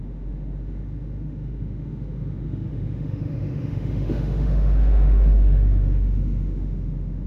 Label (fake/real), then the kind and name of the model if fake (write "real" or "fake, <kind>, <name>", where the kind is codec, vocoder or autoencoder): fake, autoencoder, DAC-VAE